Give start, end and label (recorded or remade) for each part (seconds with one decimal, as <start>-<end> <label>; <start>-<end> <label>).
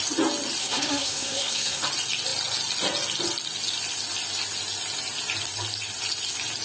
0.0-0.6 recorded; 0.6-1.8 remade; 1.8-6.6 recorded